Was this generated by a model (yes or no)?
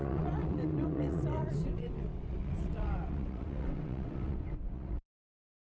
yes